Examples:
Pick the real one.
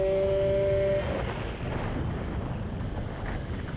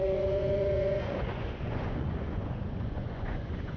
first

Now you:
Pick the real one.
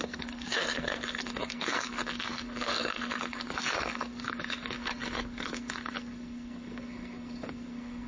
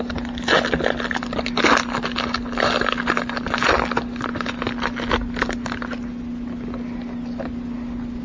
second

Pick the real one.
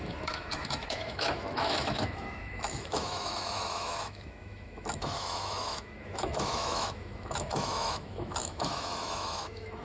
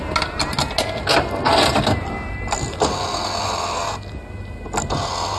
second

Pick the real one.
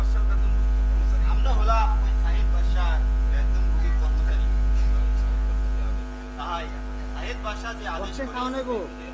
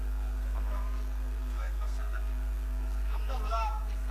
first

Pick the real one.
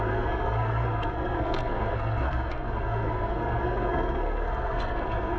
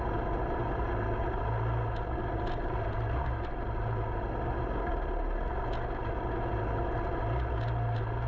second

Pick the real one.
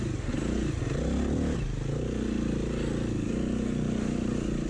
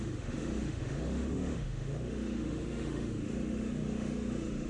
first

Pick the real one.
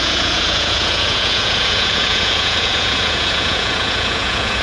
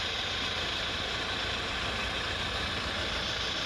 second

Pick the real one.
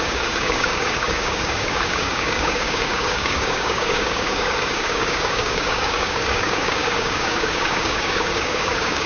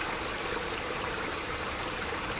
second